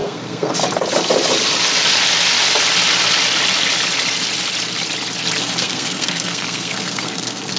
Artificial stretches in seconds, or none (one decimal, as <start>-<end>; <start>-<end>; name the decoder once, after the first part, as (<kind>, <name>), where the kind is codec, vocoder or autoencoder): 0.0-0.5 (codec, SNAC); 5.4-7.6